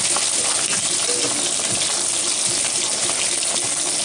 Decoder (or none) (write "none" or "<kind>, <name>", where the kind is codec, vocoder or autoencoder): none